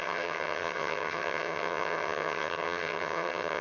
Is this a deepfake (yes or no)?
yes